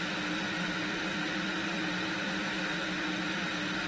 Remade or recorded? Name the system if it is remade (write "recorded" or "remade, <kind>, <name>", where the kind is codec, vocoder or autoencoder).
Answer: remade, vocoder, BigVGAN v2